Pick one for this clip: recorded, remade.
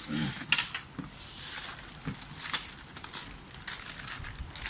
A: recorded